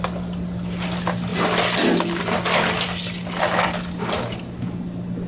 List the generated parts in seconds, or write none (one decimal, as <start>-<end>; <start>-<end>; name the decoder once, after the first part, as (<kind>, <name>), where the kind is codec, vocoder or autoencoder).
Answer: none